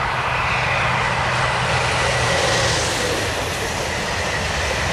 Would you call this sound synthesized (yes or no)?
no